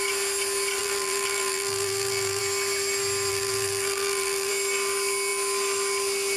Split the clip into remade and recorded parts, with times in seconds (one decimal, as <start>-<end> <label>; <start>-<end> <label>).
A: 0.0-0.8 recorded; 0.8-2.4 remade; 2.4-3.3 recorded; 3.3-4.5 remade; 4.5-6.4 recorded